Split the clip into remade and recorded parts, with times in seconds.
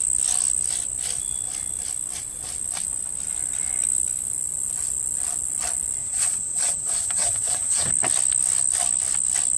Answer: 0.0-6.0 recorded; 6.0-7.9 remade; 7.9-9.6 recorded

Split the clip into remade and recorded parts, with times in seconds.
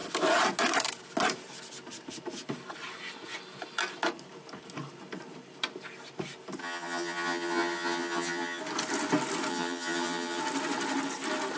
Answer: 0.0-6.6 recorded; 6.6-8.6 remade; 8.6-9.5 recorded; 9.5-10.4 remade; 10.4-11.6 recorded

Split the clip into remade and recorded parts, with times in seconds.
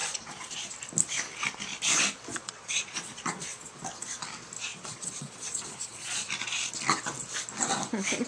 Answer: 0.0-0.5 remade; 0.5-2.3 recorded; 2.3-3.8 remade; 3.8-4.7 recorded; 4.7-6.3 remade; 6.3-8.3 recorded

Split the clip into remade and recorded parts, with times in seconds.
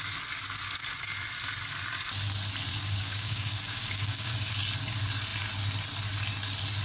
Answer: 0.0-2.7 recorded; 2.7-4.5 remade; 4.5-6.8 recorded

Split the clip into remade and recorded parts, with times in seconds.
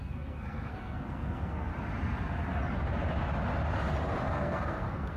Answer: 0.0-1.7 remade; 1.7-4.3 recorded; 4.3-5.2 remade